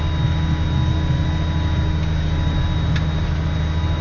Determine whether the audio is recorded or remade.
recorded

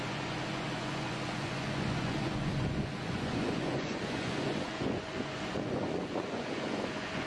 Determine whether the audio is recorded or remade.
remade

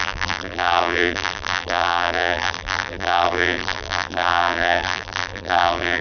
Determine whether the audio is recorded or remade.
remade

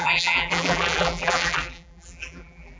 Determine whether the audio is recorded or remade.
remade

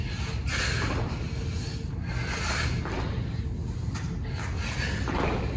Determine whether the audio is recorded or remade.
recorded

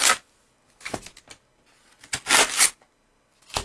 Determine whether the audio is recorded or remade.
recorded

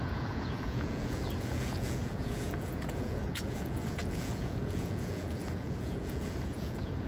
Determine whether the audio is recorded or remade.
remade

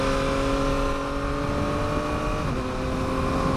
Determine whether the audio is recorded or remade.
recorded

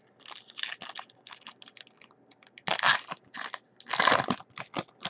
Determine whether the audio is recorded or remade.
recorded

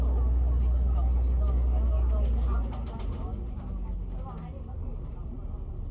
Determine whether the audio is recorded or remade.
recorded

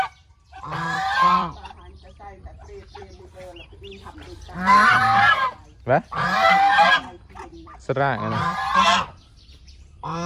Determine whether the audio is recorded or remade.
remade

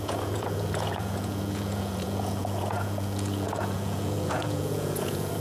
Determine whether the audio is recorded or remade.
remade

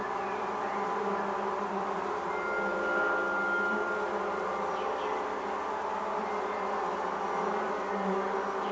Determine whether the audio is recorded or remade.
recorded